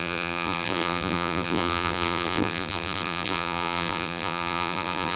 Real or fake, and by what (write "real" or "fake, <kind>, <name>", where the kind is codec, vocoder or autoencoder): fake, vocoder, BigVGAN v2